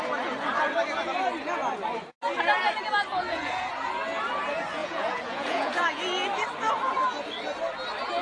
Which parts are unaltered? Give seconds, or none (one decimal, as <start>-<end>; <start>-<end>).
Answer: 0.0-3.1; 3.7-4.8; 6.0-8.2

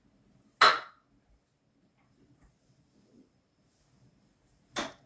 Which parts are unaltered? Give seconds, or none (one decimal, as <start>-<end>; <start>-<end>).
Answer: 0.0-5.1

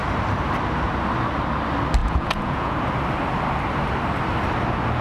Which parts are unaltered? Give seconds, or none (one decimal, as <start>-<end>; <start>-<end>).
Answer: 0.0-2.0; 2.7-5.0

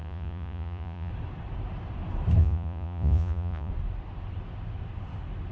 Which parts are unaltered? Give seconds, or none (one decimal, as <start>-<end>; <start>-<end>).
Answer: 1.1-2.4; 3.7-5.5

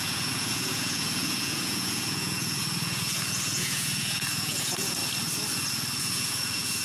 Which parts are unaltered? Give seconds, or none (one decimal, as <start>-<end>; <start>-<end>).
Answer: 5.0-6.0

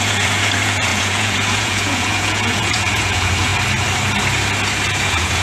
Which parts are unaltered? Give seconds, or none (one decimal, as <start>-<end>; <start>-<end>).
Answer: 3.5-4.9

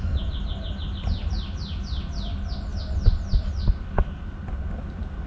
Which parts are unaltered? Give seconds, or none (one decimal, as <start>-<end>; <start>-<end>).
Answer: 0.0-5.3